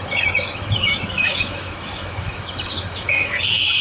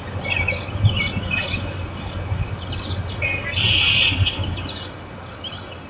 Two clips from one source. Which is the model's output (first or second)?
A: first